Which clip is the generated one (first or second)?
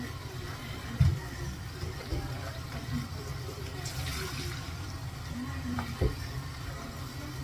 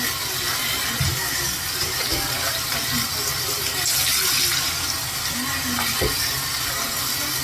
first